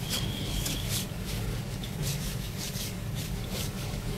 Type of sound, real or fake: fake